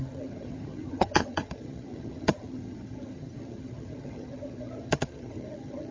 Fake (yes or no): yes